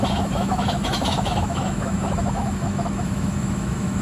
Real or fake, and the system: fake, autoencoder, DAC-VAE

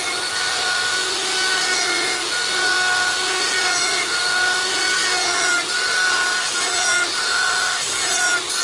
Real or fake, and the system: real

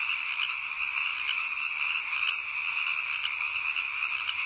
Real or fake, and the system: real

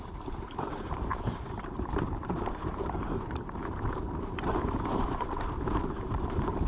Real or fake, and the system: fake, vocoder, BigVGAN v2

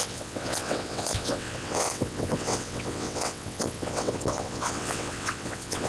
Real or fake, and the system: fake, vocoder, WaveNeXt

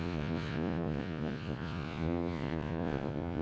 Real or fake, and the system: fake, vocoder, Vocos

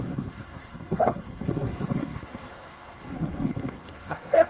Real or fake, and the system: fake, codec, SNAC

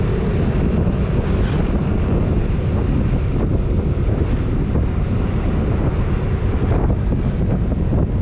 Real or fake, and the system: real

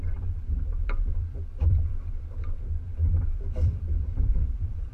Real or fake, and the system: fake, vocoder, BigVGAN v2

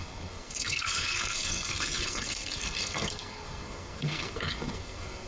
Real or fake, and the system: fake, codec, SNAC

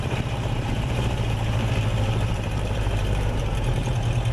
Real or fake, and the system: fake, vocoder, BigVGAN v2